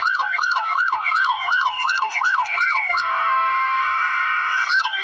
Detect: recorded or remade remade